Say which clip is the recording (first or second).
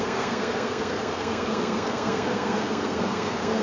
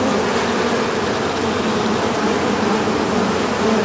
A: second